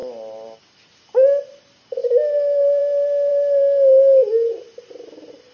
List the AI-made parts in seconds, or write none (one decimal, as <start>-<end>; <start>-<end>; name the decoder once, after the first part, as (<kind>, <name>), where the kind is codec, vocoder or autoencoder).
none